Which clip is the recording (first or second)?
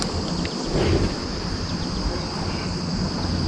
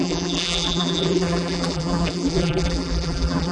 first